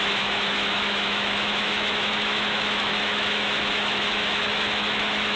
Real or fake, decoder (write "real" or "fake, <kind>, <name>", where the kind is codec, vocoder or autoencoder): fake, autoencoder, DAC-VAE